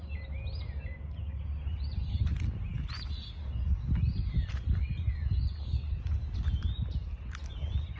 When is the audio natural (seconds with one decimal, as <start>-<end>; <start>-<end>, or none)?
0.0-8.0